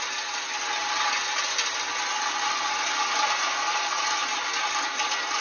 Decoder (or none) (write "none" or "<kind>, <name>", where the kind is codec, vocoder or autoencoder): none